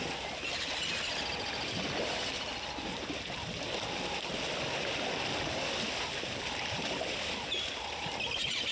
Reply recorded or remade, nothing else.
recorded